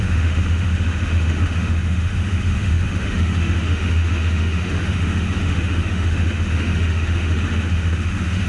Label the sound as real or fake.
fake